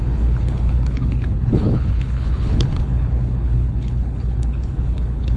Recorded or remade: remade